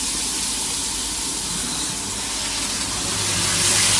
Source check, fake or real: real